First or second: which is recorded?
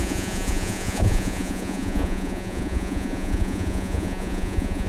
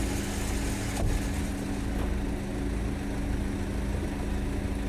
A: second